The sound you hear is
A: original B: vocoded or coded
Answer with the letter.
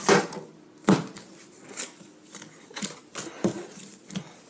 A